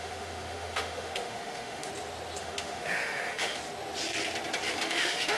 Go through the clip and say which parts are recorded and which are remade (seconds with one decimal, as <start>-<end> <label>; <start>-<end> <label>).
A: 0.0-1.9 remade; 1.9-2.4 recorded; 2.4-3.6 remade; 3.6-4.8 recorded; 4.8-5.4 remade